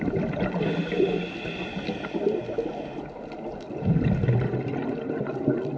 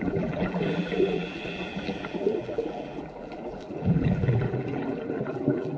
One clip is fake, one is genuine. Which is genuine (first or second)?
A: first